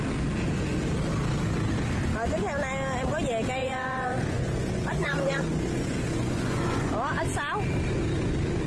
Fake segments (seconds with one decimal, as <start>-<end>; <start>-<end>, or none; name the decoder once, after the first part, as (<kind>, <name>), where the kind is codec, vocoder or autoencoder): 3.6-6.9 (vocoder, Vocos)